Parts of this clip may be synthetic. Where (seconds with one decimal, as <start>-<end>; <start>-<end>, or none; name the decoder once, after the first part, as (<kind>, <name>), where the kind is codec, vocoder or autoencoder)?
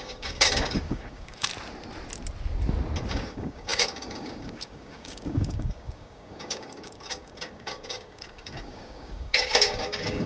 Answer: 0.0-1.5 (codec, DAC); 3.1-10.3